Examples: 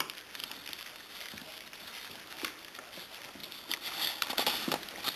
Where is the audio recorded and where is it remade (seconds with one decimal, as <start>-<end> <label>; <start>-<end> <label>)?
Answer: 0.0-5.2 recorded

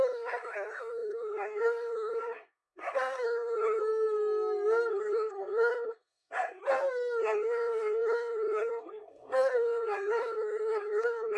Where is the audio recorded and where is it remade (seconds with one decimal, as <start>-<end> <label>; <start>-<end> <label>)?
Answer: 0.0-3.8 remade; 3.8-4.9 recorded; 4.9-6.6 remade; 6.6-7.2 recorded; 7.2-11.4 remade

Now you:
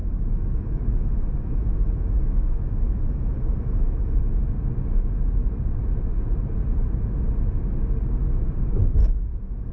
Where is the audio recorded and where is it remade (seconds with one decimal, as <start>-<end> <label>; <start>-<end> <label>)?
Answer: 0.0-4.2 remade; 4.2-9.0 recorded; 9.0-9.7 remade

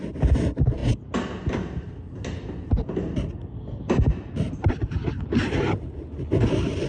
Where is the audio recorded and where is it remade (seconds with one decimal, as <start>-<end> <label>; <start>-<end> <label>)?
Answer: 0.0-6.9 recorded

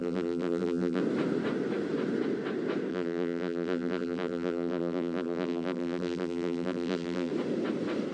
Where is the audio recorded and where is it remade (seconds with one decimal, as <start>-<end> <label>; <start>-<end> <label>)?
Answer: 0.0-1.0 remade; 1.0-2.9 recorded; 2.9-7.3 remade; 7.3-8.1 recorded